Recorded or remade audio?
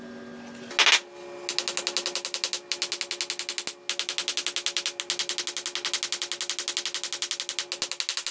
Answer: recorded